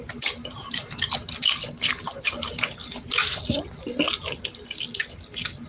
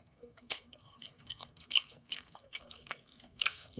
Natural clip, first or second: first